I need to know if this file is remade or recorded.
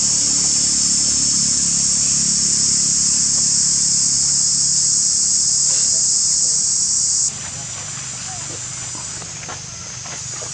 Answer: recorded